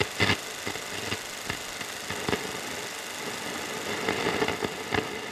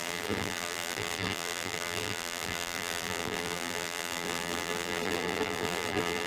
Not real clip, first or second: second